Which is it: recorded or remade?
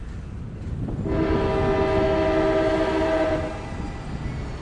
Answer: recorded